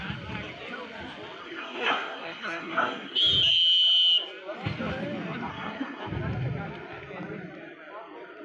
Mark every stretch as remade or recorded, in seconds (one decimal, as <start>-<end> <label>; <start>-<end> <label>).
0.0-1.4 recorded; 1.4-3.2 remade; 3.2-5.5 recorded; 5.5-6.0 remade; 6.0-8.4 recorded